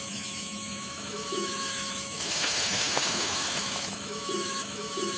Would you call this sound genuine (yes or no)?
no